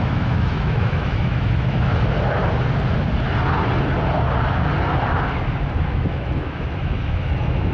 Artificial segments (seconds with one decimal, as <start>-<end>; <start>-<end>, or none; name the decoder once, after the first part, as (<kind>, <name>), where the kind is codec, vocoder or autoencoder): 0.0-1.9 (autoencoder, DAC-VAE); 5.8-7.7